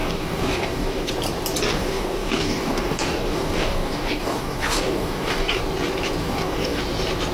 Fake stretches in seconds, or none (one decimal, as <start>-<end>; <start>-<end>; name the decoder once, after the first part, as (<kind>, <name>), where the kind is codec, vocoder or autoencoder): 0.0-1.1 (codec, DAC); 1.7-5.6; 6.2-6.8